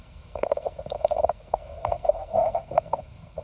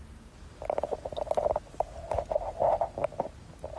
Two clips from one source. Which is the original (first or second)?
second